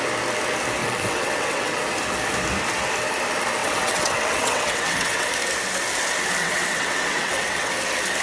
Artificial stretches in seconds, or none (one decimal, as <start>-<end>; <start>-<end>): 0.8-1.8; 3.6-5.3; 6.4-7.7